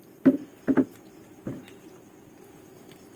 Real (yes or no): yes